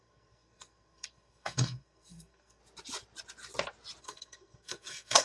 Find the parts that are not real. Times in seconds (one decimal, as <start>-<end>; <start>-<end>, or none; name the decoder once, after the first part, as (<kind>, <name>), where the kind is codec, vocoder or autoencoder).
0.0-2.6 (codec, SNAC); 4.0-5.2